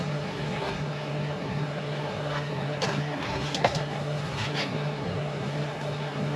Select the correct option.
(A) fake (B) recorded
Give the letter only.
A